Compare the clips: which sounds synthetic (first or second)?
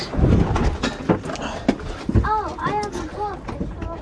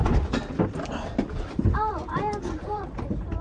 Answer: second